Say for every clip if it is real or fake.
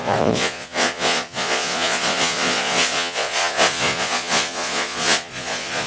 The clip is fake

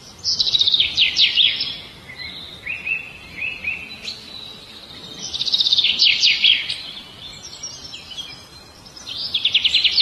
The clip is real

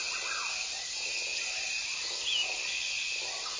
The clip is real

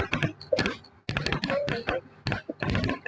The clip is real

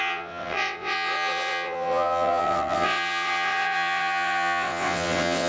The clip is fake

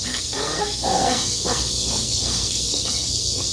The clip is fake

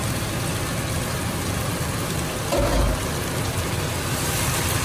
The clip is real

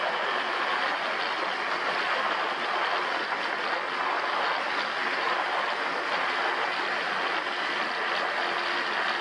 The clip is real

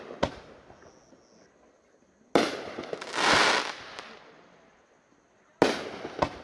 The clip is real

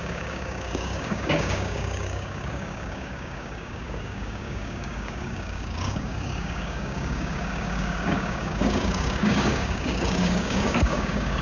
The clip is fake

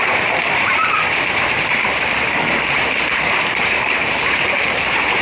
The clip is fake